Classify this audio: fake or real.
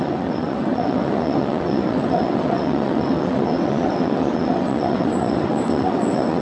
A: fake